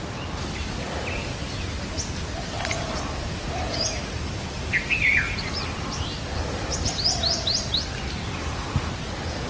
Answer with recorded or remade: recorded